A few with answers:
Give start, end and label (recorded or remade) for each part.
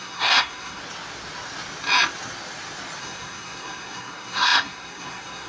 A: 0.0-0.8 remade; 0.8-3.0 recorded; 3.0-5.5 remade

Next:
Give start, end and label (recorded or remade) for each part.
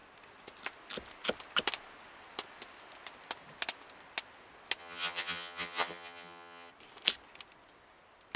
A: 0.0-4.8 recorded; 4.8-6.7 remade; 6.7-8.4 recorded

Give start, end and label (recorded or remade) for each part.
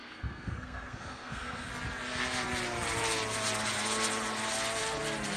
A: 0.0-1.7 remade; 1.7-5.4 recorded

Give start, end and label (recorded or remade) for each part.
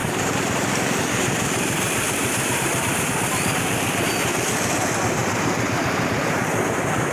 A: 0.0-3.0 remade; 3.0-5.2 recorded; 5.2-7.1 remade